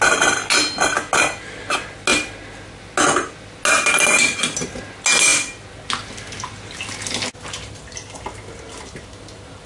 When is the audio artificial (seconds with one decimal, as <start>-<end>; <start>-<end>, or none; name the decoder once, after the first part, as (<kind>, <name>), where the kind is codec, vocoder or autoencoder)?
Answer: none